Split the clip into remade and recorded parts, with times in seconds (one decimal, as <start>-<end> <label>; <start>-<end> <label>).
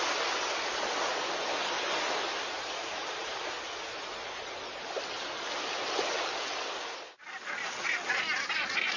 0.0-3.0 recorded; 3.0-4.8 remade; 4.8-9.0 recorded